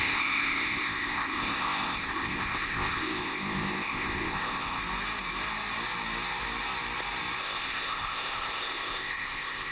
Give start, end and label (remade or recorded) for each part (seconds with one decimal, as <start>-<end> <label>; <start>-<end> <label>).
0.0-4.8 remade; 4.8-7.4 recorded; 7.4-9.7 remade